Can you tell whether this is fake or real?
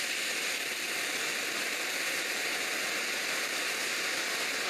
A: real